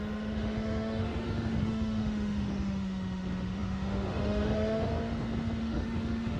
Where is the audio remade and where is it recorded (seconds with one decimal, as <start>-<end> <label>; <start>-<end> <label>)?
0.0-4.9 remade; 4.9-5.6 recorded; 5.6-6.4 remade